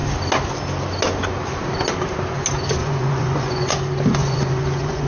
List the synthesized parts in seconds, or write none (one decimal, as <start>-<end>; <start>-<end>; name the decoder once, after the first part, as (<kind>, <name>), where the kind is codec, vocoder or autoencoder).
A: 2.8-3.7 (vocoder, Vocos); 4.2-5.1